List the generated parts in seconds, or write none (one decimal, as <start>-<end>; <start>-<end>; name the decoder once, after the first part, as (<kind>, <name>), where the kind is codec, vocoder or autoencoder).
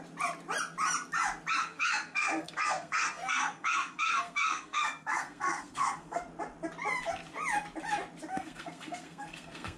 1.6-6.2 (codec, SNAC); 8.3-9.8